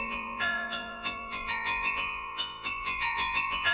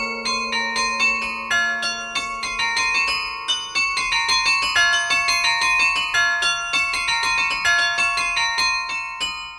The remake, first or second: first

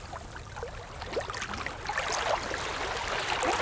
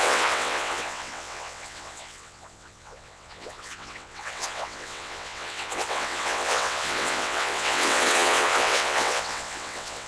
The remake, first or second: second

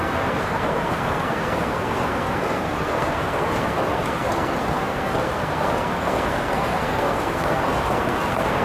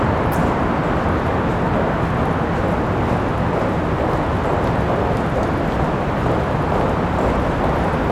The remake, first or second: first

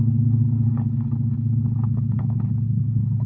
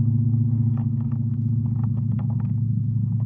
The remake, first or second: first